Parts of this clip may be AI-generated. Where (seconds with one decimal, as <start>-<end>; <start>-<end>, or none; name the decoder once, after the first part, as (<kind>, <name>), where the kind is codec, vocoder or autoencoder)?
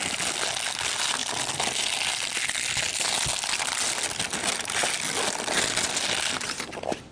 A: none